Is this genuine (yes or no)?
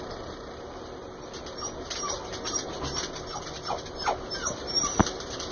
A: yes